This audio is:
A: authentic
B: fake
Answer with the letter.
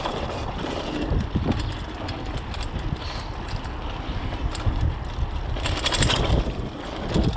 A